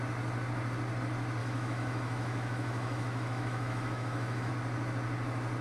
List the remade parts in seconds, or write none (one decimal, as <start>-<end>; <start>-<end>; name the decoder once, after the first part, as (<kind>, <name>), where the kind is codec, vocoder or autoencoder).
1.4-4.5 (autoencoder, DAC-VAE)